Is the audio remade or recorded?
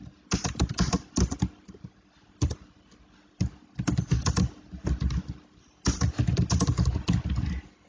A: recorded